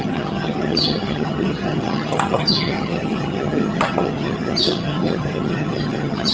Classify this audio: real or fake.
fake